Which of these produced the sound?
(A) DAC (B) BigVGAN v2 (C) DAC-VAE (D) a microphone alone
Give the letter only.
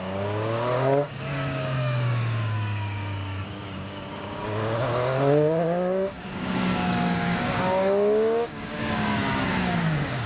A